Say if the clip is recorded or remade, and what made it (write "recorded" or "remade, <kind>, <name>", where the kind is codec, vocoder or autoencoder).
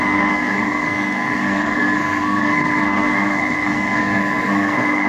remade, codec, SNAC